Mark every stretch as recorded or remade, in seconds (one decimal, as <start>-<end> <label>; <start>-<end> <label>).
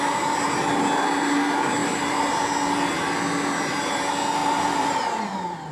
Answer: 0.0-4.4 recorded; 4.4-5.7 remade